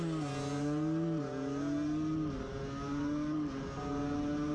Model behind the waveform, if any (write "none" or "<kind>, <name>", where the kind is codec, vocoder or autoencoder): none